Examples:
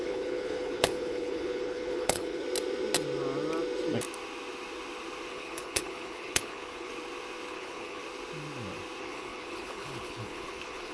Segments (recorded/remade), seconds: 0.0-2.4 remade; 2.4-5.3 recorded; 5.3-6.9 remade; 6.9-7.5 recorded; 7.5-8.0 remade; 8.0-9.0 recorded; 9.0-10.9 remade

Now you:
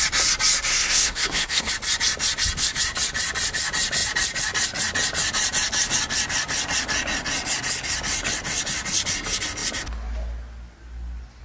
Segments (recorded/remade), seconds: 0.0-0.7 recorded; 0.7-1.7 remade; 1.7-11.4 recorded